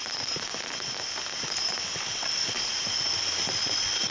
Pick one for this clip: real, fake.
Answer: real